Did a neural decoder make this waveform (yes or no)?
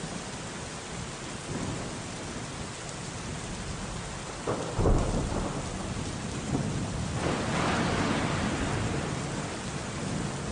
no